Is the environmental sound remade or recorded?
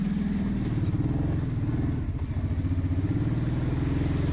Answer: recorded